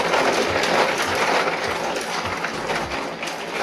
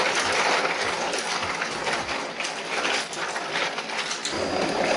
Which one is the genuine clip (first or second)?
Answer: first